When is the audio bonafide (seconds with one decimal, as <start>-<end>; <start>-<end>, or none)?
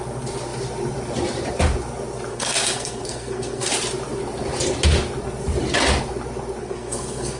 0.0-2.3; 3.7-6.6